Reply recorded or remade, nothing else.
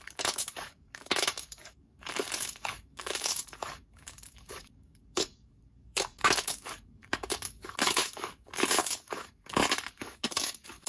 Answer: remade